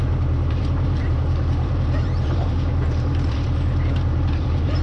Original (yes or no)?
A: no